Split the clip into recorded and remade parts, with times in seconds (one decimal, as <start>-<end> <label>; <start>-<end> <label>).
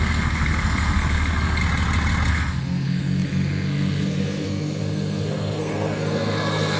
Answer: 0.0-1.6 remade; 1.6-2.3 recorded; 2.3-6.8 remade